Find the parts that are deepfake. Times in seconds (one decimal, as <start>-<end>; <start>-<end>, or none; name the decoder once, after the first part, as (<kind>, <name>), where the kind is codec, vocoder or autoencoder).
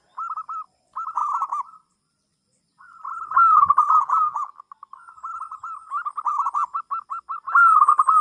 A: 1.2-2.6 (vocoder, BigVGAN v2)